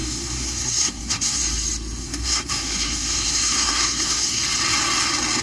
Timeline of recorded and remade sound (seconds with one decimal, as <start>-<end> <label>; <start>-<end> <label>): 0.0-1.4 remade; 1.4-2.0 recorded; 2.0-4.4 remade; 4.4-5.4 recorded

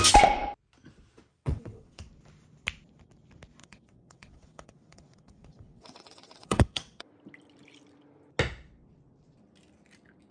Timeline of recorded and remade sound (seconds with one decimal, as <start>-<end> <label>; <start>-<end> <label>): 0.0-1.3 recorded; 1.3-2.1 remade; 2.1-3.6 recorded; 3.6-7.1 remade; 7.1-10.3 recorded

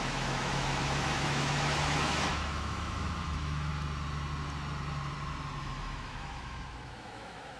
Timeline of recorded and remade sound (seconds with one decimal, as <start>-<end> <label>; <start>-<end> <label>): 0.0-3.7 remade; 3.7-5.6 recorded; 5.6-7.6 remade

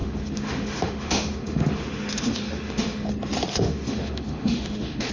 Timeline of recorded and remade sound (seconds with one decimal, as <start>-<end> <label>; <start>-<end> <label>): 0.0-3.1 remade; 3.1-3.5 recorded; 3.5-5.1 remade

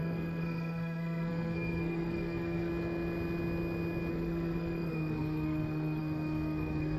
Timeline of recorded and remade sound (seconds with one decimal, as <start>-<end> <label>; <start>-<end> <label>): 0.0-2.7 remade; 2.7-4.1 recorded; 4.1-7.0 remade